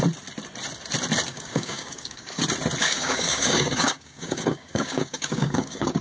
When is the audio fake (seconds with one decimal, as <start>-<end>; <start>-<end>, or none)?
1.3-2.4; 2.8-6.0